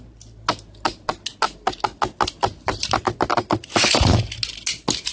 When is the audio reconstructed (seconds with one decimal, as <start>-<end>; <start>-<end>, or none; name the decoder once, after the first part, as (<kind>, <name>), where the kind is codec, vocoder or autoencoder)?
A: none